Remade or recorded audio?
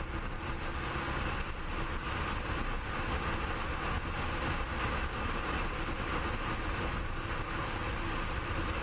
recorded